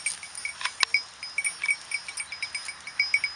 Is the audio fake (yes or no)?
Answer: no